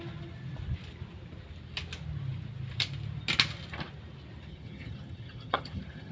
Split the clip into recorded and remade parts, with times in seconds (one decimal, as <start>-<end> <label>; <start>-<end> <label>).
0.0-4.5 recorded; 4.5-6.1 remade